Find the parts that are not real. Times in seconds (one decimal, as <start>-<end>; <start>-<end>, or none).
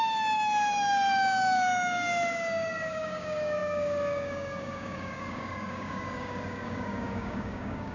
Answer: 0.0-7.9